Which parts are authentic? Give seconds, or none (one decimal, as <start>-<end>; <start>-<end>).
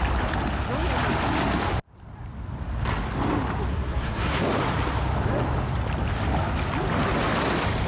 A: 0.0-3.7; 4.4-7.9